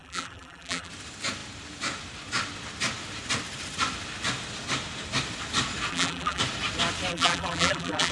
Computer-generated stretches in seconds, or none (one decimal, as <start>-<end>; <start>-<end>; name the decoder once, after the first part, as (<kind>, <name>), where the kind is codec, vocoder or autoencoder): 0.0-0.9 (vocoder, BigVGAN v2); 5.9-6.4; 7.1-8.1